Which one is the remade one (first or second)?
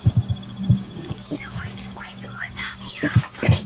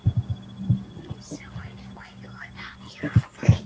first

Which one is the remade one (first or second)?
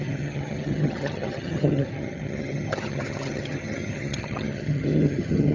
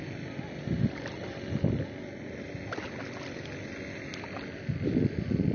first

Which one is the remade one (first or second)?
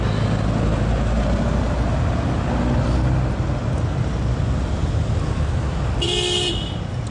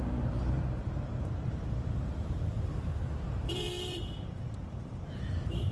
second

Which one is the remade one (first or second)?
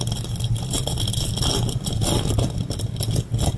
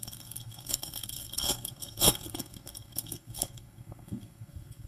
second